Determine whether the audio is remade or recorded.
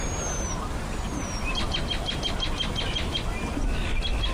recorded